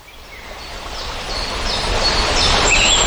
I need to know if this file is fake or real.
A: real